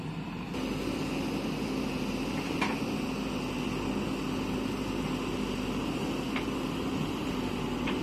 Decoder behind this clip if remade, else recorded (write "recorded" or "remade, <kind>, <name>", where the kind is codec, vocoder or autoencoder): recorded